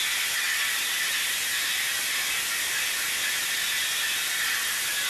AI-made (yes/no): no